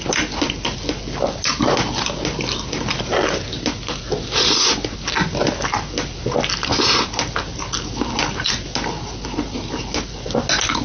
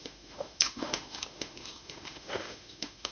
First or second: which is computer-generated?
second